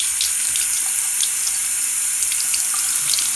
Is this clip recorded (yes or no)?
yes